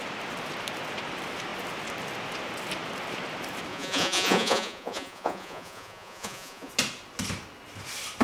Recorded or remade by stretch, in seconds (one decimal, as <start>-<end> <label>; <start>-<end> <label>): 0.0-3.7 recorded; 3.7-6.7 remade; 6.7-8.2 recorded